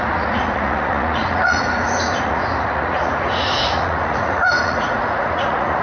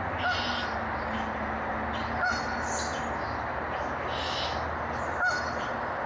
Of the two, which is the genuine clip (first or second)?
second